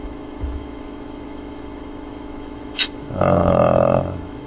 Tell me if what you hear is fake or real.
fake